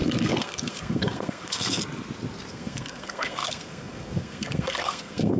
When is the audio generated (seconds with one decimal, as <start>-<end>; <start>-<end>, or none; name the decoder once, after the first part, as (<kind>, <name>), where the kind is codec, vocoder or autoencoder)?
0.0-1.8 (codec, SNAC); 2.5-5.4